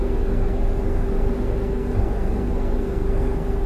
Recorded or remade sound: remade